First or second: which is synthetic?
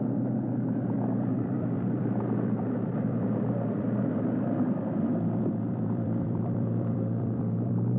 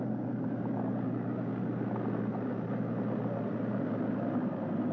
first